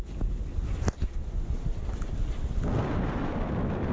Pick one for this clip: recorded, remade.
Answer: recorded